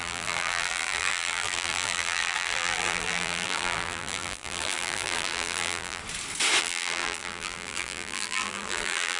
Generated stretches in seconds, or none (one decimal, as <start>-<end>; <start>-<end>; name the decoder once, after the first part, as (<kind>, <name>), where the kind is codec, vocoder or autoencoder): 0.0-6.0 (vocoder, BigVGAN v2); 6.6-9.2